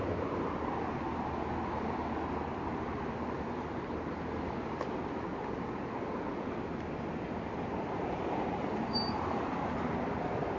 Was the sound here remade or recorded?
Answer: recorded